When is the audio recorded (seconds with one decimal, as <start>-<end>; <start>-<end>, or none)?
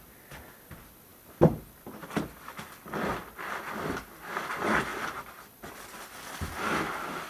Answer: 0.0-7.3